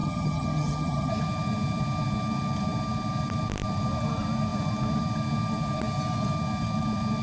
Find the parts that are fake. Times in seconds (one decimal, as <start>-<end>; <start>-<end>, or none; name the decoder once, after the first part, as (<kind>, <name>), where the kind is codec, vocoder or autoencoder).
0.0-1.1 (vocoder, HiFi-GAN)